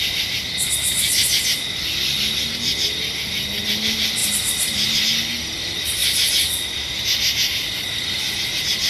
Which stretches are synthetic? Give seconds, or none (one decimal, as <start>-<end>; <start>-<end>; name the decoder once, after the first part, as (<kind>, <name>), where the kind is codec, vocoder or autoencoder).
4.2-5.0 (vocoder, BigVGAN v2)